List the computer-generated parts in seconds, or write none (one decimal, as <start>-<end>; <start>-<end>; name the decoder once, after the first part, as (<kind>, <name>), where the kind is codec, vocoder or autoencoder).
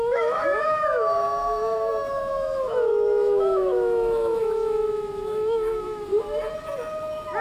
0.0-6.1 (autoencoder, DAC-VAE)